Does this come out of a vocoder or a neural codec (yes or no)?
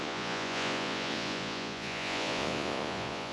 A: yes